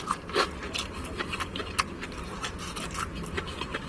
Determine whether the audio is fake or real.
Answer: real